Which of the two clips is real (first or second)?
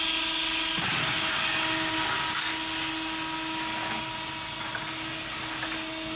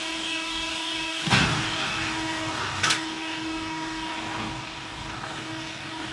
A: first